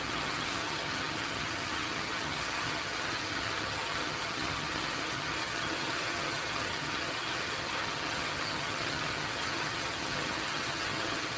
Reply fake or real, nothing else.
fake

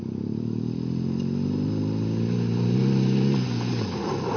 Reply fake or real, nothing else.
real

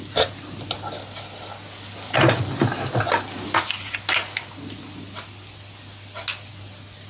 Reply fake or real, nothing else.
real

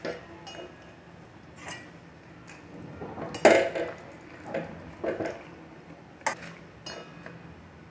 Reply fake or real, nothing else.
real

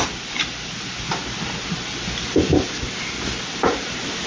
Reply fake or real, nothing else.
real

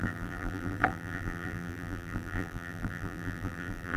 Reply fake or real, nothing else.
fake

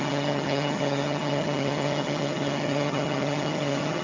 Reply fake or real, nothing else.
fake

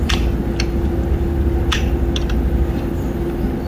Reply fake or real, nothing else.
real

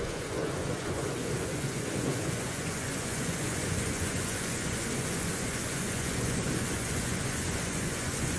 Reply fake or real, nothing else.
fake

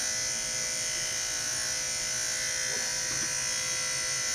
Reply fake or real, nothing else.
real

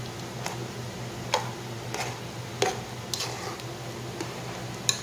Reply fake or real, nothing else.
real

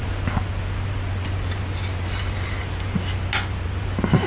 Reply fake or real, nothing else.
real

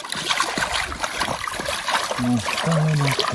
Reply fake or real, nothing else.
real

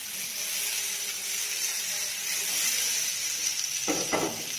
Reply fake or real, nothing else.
real